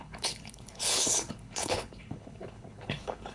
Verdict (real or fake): fake